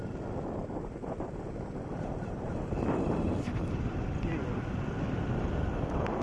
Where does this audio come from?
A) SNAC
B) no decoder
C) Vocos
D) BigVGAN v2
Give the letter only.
B